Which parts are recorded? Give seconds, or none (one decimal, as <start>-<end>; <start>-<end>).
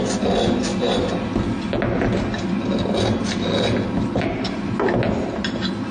0.0-5.9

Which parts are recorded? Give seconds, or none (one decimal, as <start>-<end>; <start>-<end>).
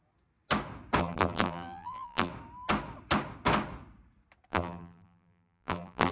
0.0-1.0; 2.3-4.5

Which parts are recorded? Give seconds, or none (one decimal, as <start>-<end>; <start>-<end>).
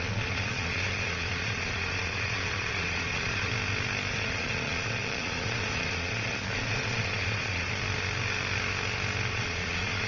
3.5-4.1; 7.7-9.3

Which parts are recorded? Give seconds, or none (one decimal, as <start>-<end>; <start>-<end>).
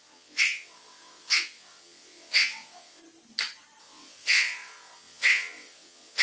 3.0-3.8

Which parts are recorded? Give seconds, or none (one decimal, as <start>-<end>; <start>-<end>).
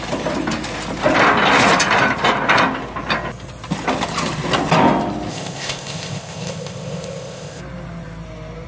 0.0-5.3; 7.6-8.7